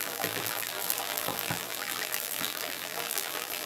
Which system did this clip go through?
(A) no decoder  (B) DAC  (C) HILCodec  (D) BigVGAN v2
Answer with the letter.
D